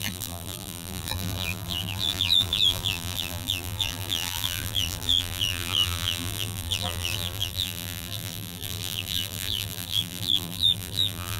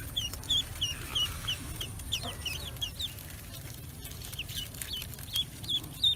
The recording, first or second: second